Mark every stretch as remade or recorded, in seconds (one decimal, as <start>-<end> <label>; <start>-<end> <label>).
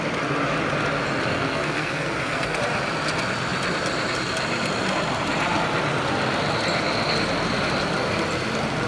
0.0-1.3 recorded; 1.3-2.6 remade; 2.6-8.9 recorded